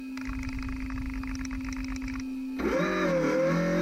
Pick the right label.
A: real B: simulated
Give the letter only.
A